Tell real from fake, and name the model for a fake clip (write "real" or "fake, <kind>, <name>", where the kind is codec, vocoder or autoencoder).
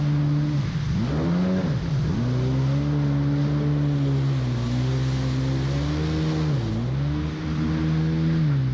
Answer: real